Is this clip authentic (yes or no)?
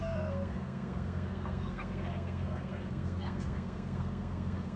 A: no